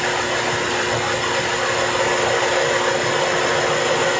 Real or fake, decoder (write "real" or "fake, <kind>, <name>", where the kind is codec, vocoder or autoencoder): real